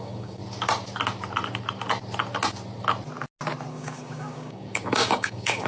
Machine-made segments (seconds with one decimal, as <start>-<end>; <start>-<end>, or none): 0.0-0.4; 3.7-5.7